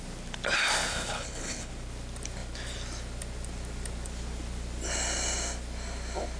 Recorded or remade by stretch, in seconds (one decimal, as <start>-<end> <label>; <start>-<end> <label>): 0.0-0.9 recorded; 0.9-1.7 remade; 1.7-6.4 recorded